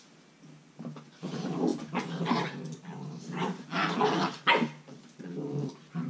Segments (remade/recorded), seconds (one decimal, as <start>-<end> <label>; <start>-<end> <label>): 0.0-6.1 recorded